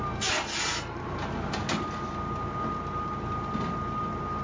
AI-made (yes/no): no